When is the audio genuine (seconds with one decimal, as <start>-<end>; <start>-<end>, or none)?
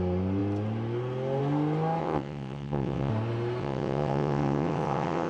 0.0-2.0; 3.1-3.6